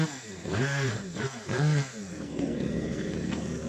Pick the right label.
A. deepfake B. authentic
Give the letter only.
A